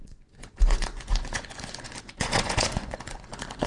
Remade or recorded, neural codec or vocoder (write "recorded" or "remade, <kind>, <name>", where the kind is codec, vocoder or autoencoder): remade, vocoder, Vocos